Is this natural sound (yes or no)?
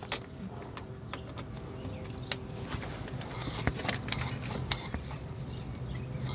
yes